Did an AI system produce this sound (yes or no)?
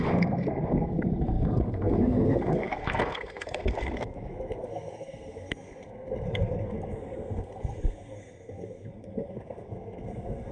yes